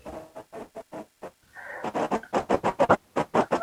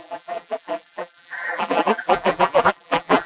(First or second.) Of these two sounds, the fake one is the second